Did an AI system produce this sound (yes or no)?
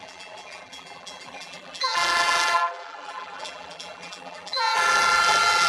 yes